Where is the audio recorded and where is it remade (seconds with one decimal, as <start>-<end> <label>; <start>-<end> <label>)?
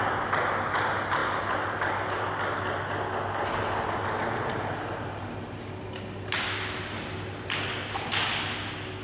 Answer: 0.0-9.0 recorded